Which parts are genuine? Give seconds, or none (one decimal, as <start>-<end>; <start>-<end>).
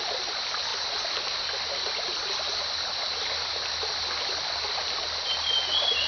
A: 0.0-6.1